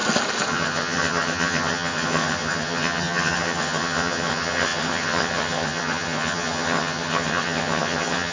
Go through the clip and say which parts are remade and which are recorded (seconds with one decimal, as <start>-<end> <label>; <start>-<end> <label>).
0.0-0.5 recorded; 0.5-8.3 remade